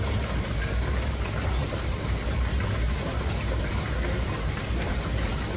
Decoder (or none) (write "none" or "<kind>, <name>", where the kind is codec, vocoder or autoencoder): vocoder, BigVGAN v2